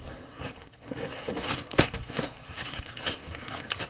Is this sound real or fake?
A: fake